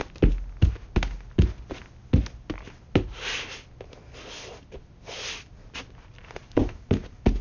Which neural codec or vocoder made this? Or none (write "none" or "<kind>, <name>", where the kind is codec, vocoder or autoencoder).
none